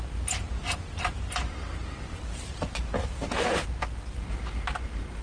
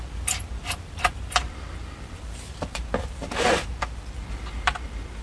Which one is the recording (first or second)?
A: first